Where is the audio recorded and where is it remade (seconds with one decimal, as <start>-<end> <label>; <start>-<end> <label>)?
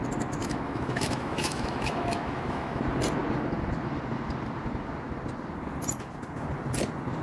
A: 0.0-0.4 recorded; 0.4-2.8 remade; 2.8-7.2 recorded